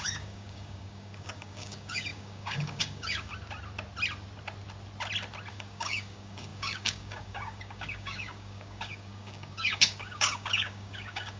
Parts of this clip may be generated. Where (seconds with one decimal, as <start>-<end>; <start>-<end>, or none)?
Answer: 0.0-3.3; 5.5-11.4